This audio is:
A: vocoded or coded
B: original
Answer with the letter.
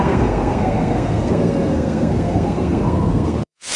A